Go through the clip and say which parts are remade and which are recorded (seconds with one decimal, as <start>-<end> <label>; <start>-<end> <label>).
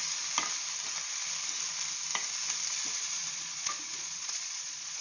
0.0-3.0 recorded; 3.0-5.0 remade